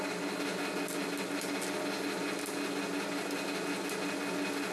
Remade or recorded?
recorded